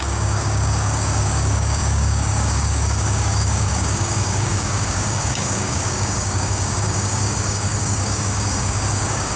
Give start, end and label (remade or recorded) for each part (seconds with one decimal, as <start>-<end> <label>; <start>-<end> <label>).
0.0-9.4 remade